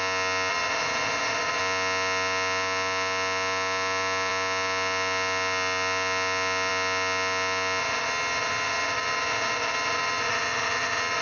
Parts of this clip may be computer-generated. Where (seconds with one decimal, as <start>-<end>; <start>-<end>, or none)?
0.5-1.6; 7.8-11.2